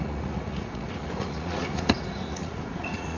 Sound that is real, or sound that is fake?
fake